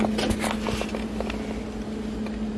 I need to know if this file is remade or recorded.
recorded